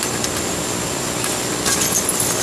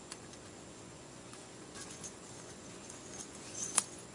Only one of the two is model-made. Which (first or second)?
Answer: second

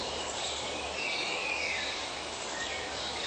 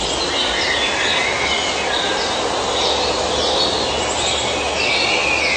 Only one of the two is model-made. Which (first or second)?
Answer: first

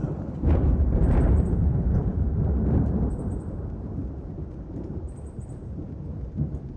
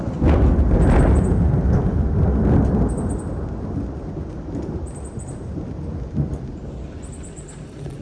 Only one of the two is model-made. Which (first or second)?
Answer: first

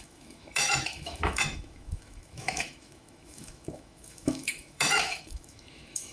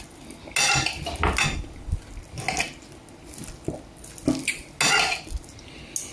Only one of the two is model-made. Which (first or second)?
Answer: first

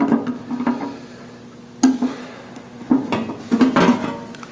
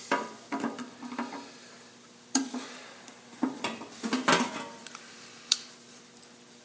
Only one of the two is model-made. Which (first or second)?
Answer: second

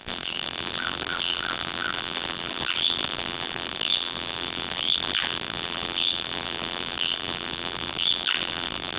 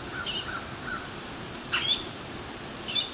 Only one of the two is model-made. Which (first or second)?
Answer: first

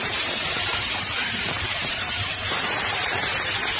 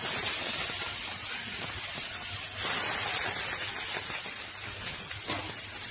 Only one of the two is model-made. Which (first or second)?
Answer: first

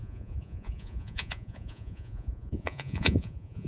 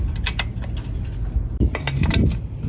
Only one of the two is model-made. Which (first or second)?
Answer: first